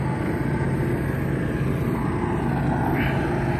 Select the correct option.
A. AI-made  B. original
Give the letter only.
B